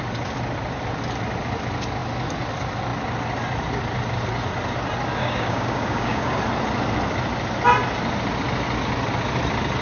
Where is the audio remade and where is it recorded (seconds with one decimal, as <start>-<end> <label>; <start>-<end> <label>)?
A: 0.0-5.2 recorded; 5.2-6.4 remade; 6.4-9.8 recorded